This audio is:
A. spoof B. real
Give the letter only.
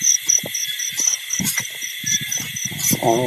B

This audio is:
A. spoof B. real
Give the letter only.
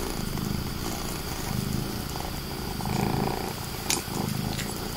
B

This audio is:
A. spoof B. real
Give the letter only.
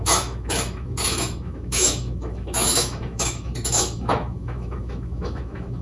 A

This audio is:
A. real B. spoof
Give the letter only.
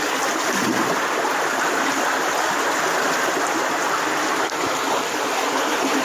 A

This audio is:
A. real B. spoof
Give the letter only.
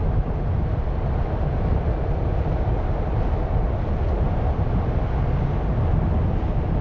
A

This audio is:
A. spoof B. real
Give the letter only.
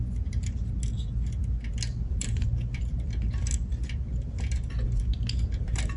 B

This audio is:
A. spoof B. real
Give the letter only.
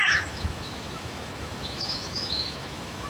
A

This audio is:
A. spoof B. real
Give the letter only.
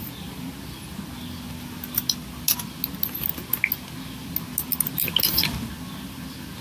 B